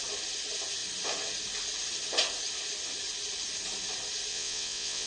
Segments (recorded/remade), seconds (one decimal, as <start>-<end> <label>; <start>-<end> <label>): 0.0-4.3 recorded; 4.3-5.1 remade